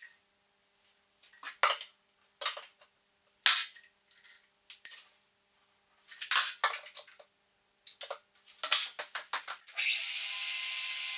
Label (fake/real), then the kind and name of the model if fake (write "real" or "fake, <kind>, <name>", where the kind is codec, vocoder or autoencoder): real